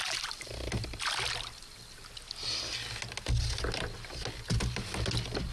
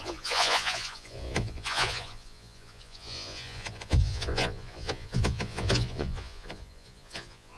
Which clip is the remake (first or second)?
second